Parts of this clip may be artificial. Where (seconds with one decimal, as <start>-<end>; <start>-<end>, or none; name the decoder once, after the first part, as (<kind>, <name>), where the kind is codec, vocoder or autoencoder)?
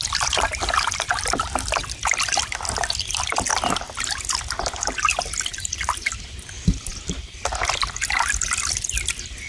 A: 5.1-6.3 (vocoder, BigVGAN v2); 6.9-7.4